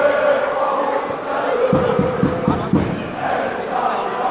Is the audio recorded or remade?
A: recorded